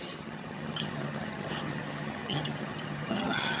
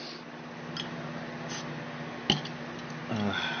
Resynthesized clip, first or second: first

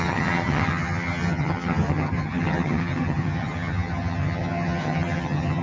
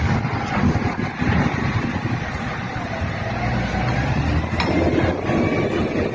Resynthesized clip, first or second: first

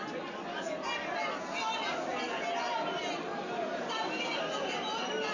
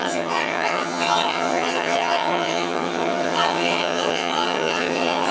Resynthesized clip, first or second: second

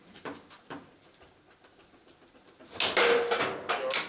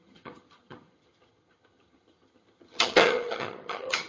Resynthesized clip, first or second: second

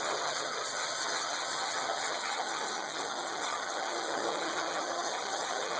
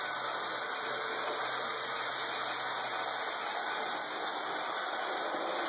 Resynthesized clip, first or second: first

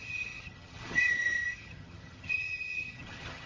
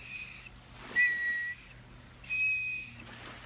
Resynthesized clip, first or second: first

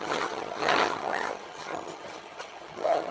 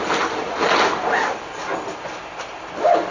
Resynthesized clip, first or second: first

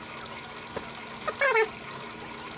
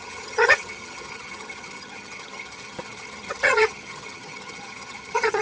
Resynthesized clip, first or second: second